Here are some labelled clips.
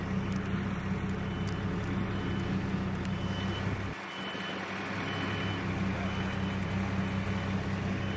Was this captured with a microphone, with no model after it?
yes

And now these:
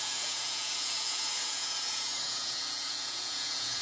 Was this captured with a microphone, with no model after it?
no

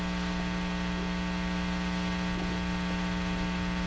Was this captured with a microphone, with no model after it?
yes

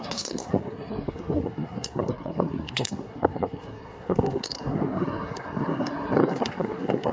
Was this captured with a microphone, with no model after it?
no